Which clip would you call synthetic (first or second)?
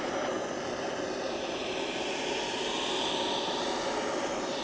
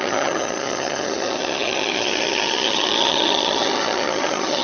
second